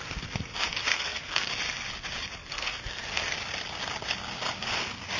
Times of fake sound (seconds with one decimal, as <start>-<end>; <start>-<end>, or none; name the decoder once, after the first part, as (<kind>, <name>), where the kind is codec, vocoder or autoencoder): 0.9-1.5 (codec, SNAC); 2.4-3.3